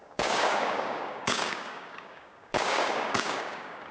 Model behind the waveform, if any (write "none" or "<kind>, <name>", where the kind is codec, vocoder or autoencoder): codec, DAC